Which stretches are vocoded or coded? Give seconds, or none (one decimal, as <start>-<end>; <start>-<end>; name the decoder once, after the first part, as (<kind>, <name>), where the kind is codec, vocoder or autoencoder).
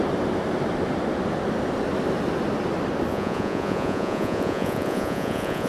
3.1-5.7 (vocoder, Vocos)